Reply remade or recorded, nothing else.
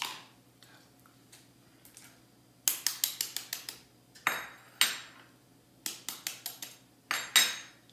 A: recorded